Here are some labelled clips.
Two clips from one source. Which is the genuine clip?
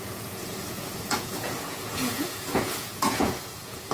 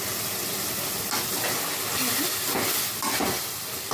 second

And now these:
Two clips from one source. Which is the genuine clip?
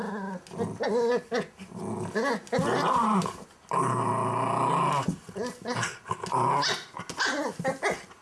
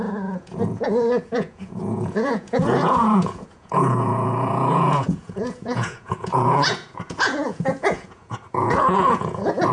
first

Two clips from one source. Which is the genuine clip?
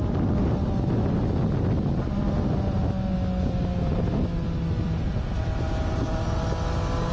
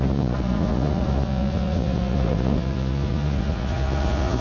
first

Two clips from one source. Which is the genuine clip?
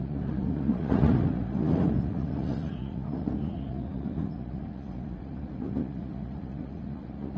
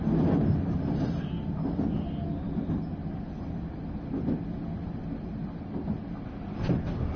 second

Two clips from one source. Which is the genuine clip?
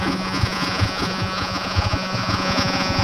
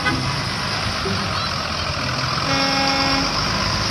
second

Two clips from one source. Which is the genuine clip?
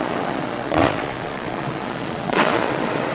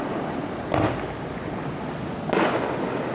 second